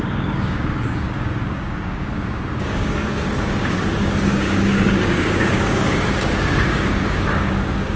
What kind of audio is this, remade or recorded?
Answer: remade